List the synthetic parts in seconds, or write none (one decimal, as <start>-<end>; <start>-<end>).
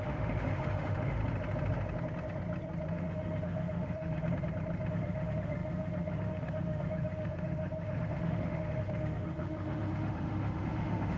0.0-1.2; 2.9-4.2; 4.9-11.2